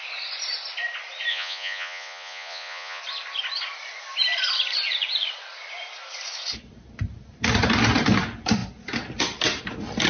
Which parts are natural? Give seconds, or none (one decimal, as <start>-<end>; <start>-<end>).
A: 0.0-1.3; 3.0-10.1